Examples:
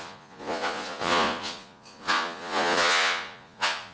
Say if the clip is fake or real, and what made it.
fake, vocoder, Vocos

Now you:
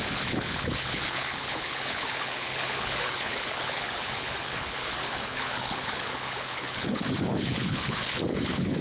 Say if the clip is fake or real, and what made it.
fake, codec, HILCodec